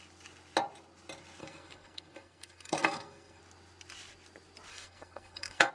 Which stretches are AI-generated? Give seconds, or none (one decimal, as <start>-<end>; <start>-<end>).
1.4-3.4; 4.7-5.7